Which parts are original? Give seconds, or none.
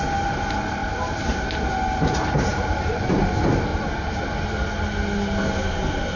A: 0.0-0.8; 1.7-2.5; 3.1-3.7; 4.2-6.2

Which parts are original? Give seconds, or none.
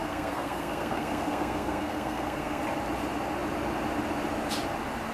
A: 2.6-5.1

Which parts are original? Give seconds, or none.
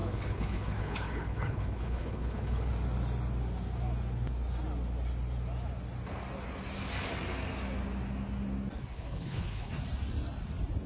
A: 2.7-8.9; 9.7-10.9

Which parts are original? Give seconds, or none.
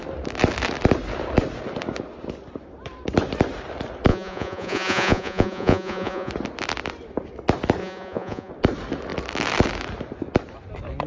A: 0.0-4.1; 6.3-7.8; 8.5-11.1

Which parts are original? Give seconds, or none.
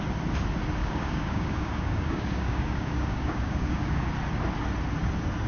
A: 0.0-0.8; 4.1-5.5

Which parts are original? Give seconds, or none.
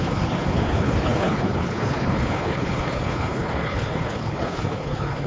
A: none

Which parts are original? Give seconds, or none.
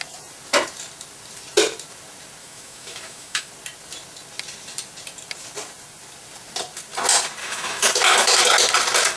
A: 0.0-2.4; 3.5-7.4; 8.4-9.2